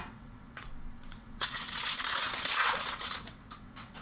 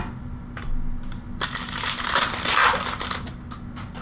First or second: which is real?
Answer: second